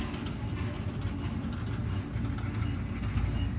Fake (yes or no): no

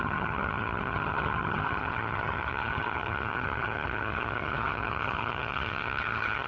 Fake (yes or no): yes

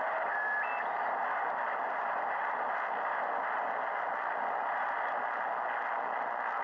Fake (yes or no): no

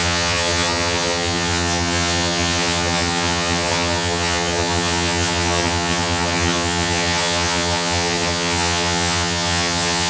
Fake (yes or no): yes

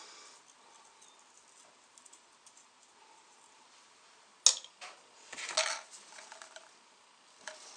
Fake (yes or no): no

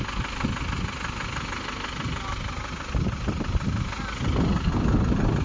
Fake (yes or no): no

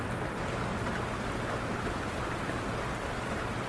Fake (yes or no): no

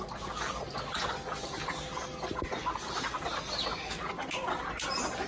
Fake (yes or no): no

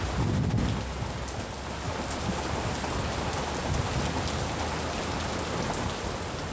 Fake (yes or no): no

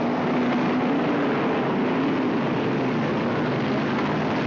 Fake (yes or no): no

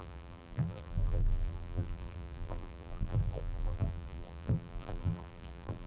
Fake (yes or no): yes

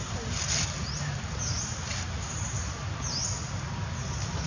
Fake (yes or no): no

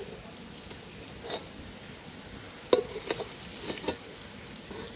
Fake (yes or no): no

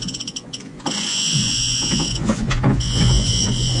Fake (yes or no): yes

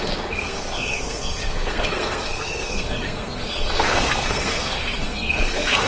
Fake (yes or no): yes